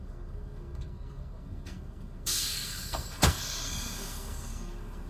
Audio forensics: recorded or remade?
remade